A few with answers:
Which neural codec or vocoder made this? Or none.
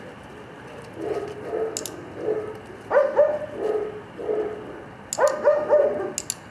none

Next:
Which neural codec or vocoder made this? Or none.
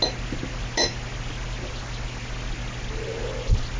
none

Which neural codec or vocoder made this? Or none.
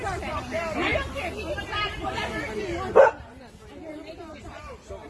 none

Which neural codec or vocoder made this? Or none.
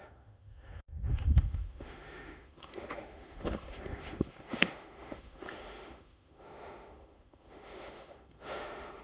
autoencoder, DAC-VAE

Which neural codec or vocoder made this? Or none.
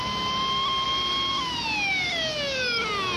none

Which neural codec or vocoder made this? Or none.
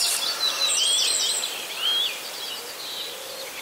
none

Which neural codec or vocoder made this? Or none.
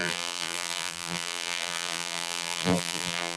vocoder, BigVGAN v2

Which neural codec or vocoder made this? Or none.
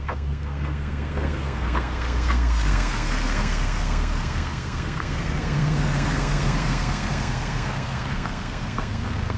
codec, SNAC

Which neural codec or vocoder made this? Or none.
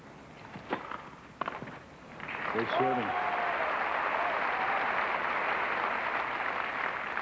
none